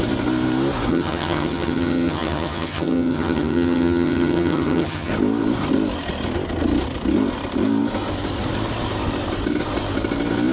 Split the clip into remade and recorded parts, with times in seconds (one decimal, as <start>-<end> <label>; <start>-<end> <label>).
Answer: 0.0-0.9 recorded; 0.9-5.1 remade; 5.1-10.5 recorded